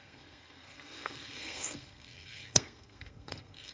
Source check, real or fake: fake